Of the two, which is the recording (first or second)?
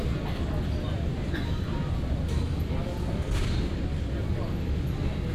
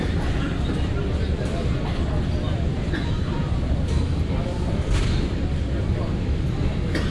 first